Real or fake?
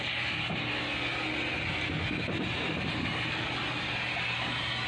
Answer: real